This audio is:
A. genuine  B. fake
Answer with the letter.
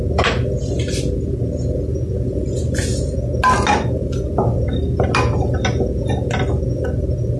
A